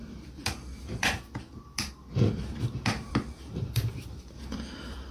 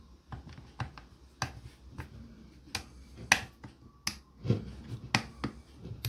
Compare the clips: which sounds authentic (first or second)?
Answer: second